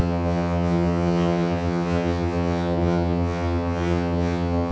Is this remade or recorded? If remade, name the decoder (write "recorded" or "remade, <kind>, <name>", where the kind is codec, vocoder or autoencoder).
remade, vocoder, HiFi-GAN